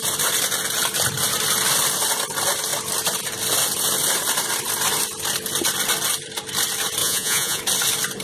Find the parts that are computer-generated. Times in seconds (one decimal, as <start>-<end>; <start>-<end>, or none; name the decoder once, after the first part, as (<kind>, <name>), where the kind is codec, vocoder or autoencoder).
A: 7.0-7.6 (vocoder, Vocos)